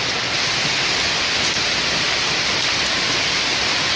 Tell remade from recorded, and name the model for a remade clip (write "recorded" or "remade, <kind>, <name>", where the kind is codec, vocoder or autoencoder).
recorded